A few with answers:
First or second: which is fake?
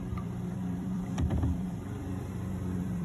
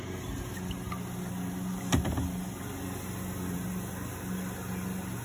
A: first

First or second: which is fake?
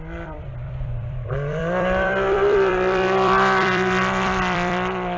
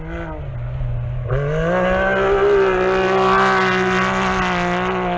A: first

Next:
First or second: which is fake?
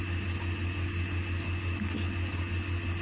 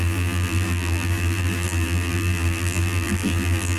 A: second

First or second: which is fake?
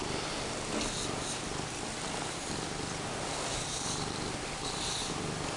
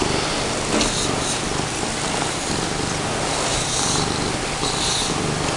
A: first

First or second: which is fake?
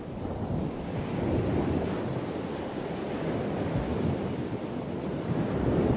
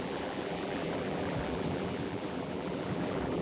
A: second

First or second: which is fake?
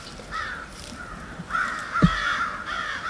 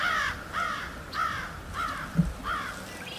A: first